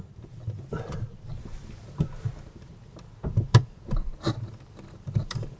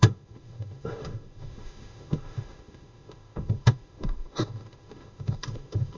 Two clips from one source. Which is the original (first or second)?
first